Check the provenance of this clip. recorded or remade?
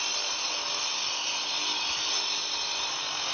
recorded